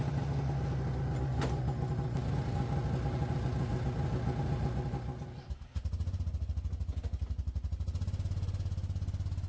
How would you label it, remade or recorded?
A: recorded